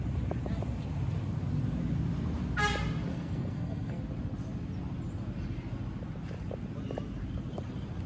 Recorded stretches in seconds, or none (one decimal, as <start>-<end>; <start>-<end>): 0.0-3.1; 4.0-8.1